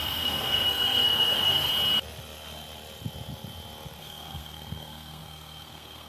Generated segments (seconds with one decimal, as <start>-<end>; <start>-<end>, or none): 0.0-1.7; 4.0-6.1